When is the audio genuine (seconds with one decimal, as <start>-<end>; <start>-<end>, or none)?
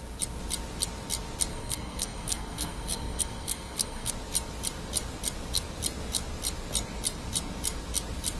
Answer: 0.0-1.5; 4.1-8.4